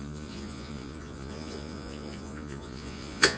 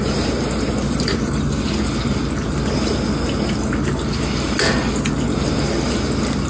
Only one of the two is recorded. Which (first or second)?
second